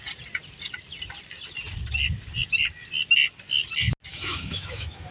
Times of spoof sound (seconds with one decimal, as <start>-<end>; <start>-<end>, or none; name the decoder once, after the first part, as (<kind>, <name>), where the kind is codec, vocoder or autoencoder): 4.1-5.1 (autoencoder, DAC-VAE)